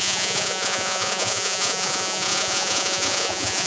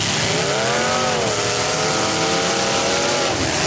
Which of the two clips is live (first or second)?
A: second